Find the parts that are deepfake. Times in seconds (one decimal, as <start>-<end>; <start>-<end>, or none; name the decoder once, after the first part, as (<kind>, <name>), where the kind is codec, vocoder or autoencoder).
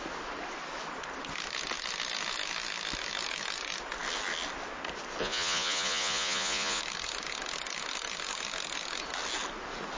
5.2-6.8 (vocoder, Vocos)